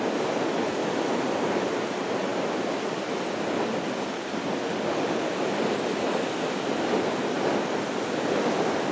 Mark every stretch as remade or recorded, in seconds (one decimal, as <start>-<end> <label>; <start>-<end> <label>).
0.0-8.9 recorded